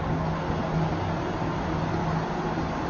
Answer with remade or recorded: recorded